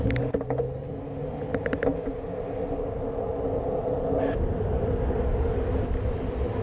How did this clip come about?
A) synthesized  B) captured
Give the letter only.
B